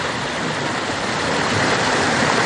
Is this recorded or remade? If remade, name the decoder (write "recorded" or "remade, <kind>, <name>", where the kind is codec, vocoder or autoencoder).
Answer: remade, vocoder, BigVGAN v2